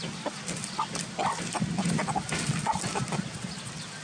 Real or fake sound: real